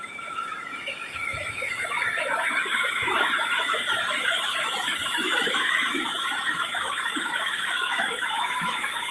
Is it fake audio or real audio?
fake